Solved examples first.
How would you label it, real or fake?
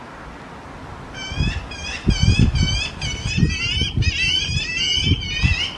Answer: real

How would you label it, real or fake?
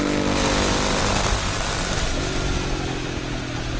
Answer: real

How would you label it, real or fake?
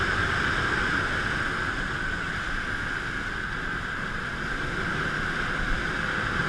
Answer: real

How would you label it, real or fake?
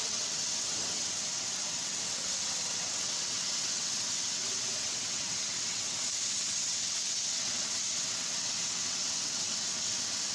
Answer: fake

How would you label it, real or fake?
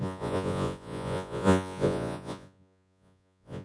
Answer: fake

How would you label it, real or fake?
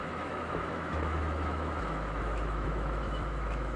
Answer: fake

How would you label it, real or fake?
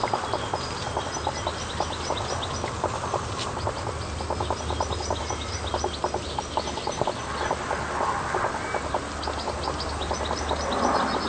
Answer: real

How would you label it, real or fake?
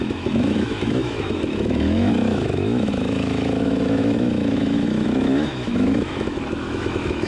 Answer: fake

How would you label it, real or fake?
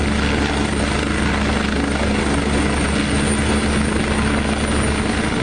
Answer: real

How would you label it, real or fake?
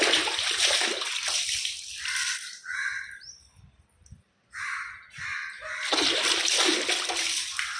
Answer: real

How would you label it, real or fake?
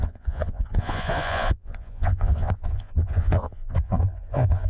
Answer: fake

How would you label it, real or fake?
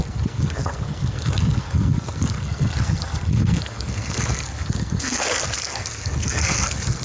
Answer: fake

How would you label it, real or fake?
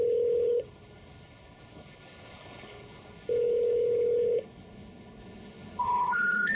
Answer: fake